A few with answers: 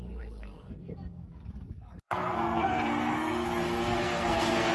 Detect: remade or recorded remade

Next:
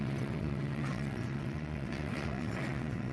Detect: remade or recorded remade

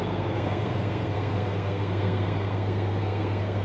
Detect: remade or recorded remade